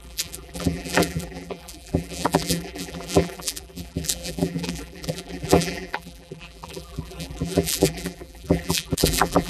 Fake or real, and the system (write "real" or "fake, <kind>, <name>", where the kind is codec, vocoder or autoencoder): fake, vocoder, BigVGAN v2